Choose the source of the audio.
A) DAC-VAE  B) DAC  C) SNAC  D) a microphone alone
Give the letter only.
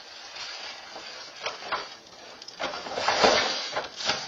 D